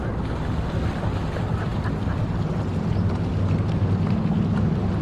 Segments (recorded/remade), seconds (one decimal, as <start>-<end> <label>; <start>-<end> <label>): 0.0-5.0 recorded